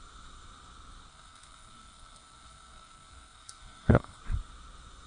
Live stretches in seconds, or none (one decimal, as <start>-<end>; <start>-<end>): 0.0-1.1; 4.2-5.1